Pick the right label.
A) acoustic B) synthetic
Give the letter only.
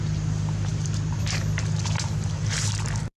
B